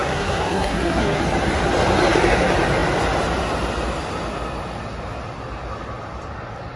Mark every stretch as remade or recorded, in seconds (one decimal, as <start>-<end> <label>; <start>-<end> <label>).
0.0-1.2 remade; 1.2-6.8 recorded